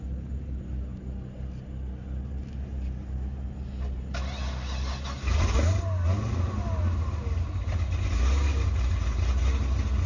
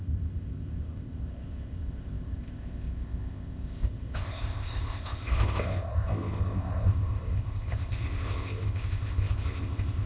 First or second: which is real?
first